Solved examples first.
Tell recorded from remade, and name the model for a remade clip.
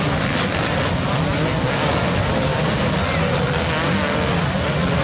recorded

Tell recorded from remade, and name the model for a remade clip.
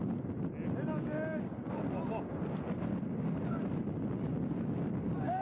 recorded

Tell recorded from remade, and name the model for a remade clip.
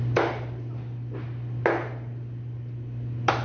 recorded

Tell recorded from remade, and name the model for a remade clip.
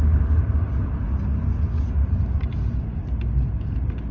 recorded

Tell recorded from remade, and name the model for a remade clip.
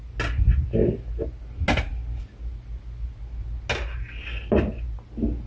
recorded